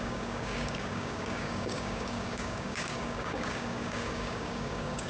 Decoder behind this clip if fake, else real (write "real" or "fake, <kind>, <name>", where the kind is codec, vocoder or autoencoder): fake, codec, DAC